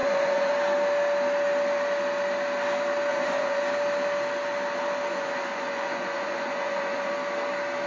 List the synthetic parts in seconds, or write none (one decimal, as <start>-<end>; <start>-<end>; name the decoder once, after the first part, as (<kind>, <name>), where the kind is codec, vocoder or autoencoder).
0.0-0.5 (vocoder, Vocos); 3.1-3.6; 5.1-7.1